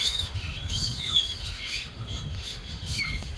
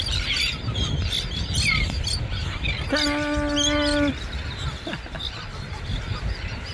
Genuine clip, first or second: second